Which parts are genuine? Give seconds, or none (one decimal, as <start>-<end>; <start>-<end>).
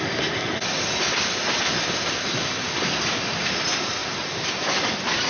0.0-4.0